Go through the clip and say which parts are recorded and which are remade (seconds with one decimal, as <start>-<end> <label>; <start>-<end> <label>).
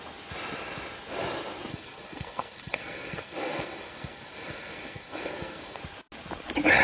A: 0.0-1.7 recorded; 1.7-5.8 remade; 5.8-6.8 recorded